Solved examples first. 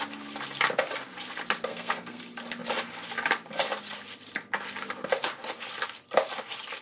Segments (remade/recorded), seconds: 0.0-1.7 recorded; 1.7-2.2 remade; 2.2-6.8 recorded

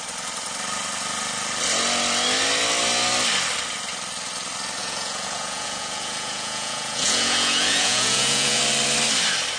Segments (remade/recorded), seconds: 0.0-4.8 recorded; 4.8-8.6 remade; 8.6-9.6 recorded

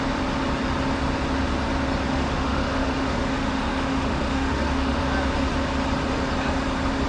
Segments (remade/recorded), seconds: 0.0-2.1 recorded; 2.1-5.0 remade; 5.0-7.1 recorded